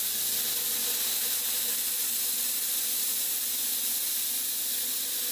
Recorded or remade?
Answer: recorded